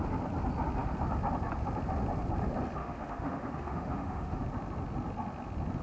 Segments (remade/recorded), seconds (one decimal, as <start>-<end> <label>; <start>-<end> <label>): 0.0-2.8 recorded; 2.8-4.4 remade; 4.4-5.8 recorded